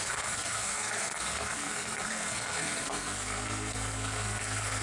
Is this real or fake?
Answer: fake